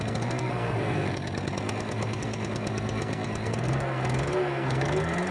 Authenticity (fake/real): fake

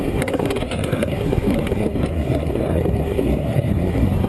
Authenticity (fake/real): fake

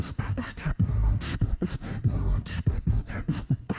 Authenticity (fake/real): fake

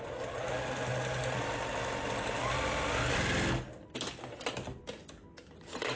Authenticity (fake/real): real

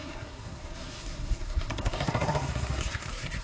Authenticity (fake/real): fake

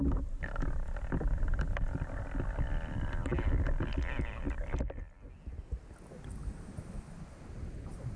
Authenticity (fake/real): real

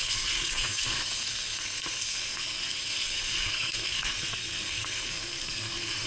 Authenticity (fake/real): fake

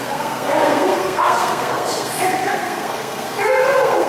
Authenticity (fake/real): fake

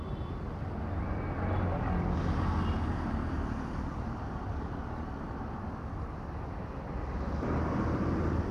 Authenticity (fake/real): real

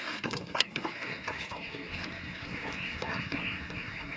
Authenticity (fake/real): fake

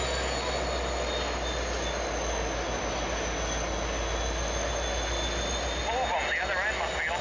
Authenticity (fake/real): real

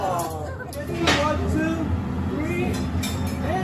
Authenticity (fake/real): real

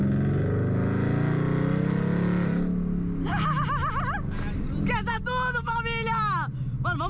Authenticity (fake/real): real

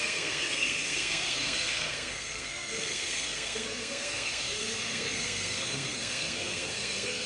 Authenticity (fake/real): fake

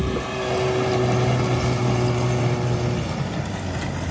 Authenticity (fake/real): real